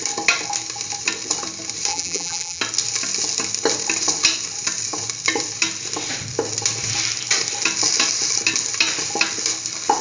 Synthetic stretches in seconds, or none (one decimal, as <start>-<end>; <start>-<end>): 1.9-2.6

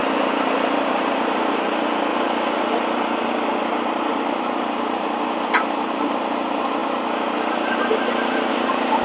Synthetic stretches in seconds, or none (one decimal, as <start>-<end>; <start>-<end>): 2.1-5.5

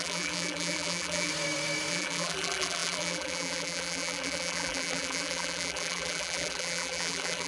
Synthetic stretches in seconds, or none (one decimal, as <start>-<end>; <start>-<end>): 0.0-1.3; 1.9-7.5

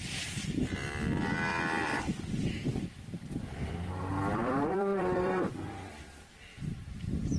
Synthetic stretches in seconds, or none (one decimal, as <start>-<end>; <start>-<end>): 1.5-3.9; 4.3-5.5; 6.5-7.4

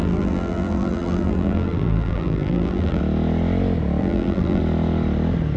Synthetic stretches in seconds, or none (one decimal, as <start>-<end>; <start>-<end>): 0.0-3.0; 4.0-4.6

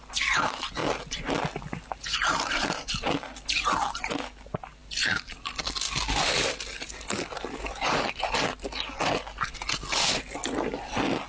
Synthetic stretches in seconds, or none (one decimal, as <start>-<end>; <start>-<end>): 4.8-6.0